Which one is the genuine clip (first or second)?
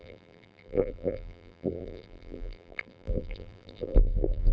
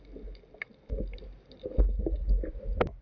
second